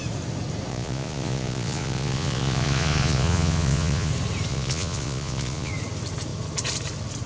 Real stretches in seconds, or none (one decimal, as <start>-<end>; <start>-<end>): 0.0-0.7; 4.1-4.5; 5.7-7.3